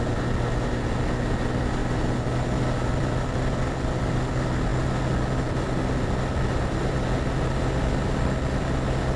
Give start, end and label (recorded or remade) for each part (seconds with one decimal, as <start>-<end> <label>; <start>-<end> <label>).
0.0-1.8 recorded; 1.8-4.2 remade; 4.2-9.2 recorded